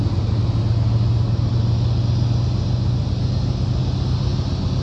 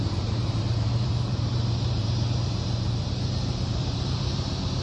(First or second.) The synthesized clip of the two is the second